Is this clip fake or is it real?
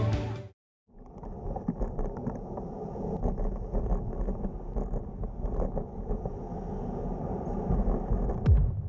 real